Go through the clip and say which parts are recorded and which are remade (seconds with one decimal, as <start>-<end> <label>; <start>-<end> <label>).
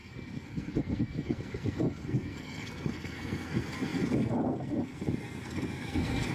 0.0-6.3 remade